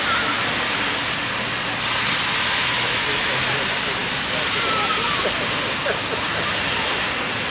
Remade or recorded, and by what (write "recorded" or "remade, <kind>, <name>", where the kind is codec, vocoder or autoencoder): recorded